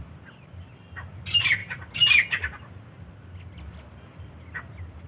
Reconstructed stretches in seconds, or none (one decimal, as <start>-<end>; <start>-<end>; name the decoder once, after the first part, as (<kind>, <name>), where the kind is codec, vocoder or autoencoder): none